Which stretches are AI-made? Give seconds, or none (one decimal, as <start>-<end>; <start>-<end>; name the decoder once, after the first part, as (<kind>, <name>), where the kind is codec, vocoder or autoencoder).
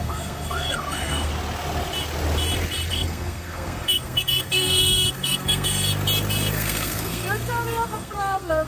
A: 0.0-1.3 (codec, SNAC); 2.9-5.9; 6.5-8.7